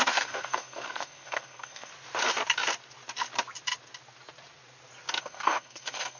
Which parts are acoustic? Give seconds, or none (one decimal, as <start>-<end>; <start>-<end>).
1.9-5.2